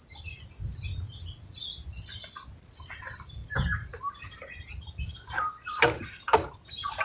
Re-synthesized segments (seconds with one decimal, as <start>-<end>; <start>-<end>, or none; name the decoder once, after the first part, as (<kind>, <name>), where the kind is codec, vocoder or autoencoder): none